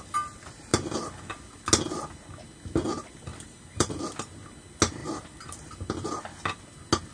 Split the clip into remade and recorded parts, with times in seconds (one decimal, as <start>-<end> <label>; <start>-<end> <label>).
0.0-3.3 recorded; 3.3-3.9 remade; 3.9-5.0 recorded; 5.0-5.7 remade; 5.7-7.1 recorded